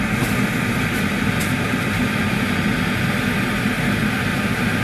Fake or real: real